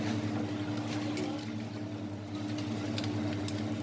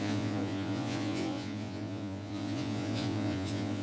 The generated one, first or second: second